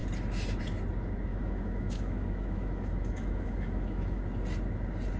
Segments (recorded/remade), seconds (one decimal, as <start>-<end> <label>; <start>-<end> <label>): 0.0-1.3 recorded; 1.3-4.2 remade; 4.2-5.2 recorded